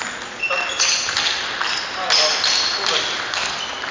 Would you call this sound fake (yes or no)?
no